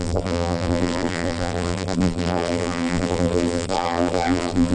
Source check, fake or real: fake